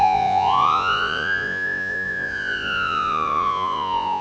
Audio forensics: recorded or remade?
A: remade